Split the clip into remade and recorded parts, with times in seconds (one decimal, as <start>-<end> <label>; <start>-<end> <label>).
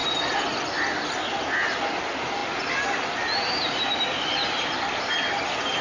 0.0-5.8 recorded